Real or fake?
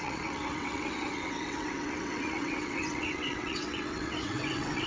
fake